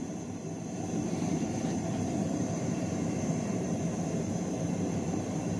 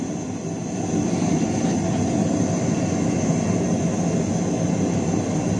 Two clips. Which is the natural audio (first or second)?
second